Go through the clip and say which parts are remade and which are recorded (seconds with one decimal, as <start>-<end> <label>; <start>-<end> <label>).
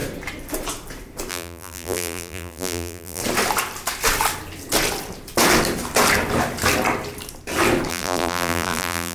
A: 0.0-1.3 recorded; 1.3-3.2 remade; 3.2-7.9 recorded; 7.9-9.1 remade